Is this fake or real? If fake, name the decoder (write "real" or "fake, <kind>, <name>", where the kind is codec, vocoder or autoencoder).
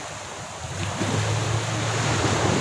real